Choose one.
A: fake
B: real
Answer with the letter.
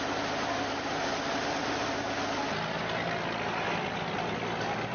B